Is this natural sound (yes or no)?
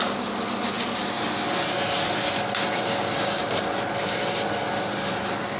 yes